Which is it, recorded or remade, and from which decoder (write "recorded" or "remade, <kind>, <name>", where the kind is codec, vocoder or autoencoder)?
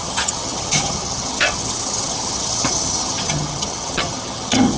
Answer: remade, vocoder, HiFi-GAN